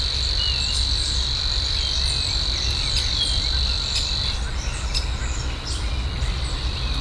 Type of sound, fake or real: real